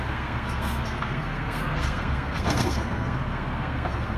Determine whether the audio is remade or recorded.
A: remade